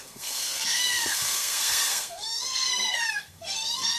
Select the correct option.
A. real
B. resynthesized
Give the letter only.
B